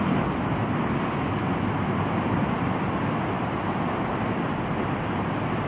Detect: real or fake real